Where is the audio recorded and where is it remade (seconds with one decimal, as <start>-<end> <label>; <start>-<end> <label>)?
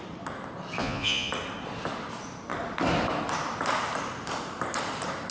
0.0-0.8 recorded; 0.8-1.3 remade; 1.3-5.3 recorded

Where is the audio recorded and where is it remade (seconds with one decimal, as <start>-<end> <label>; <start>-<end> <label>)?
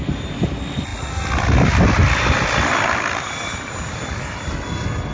0.0-5.1 recorded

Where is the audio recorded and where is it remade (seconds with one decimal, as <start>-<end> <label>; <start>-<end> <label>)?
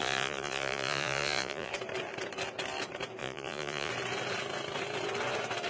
0.0-1.7 remade; 1.7-3.2 recorded; 3.2-3.9 remade; 3.9-5.7 recorded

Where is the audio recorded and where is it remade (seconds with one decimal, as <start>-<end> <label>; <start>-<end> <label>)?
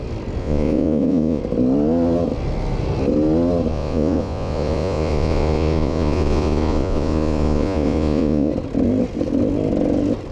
0.0-0.4 recorded; 0.4-1.4 remade; 1.4-3.7 recorded; 3.7-8.5 remade; 8.5-10.3 recorded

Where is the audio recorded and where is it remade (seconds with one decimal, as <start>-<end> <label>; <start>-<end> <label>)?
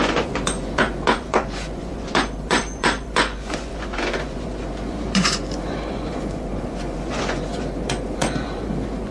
0.0-9.1 remade